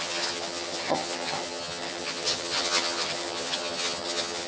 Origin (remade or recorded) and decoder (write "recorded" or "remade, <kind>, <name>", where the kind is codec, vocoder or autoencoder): remade, vocoder, HiFi-GAN